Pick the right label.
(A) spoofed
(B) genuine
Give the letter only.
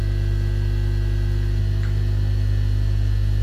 B